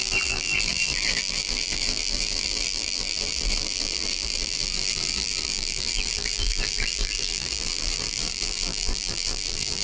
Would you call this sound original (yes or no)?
no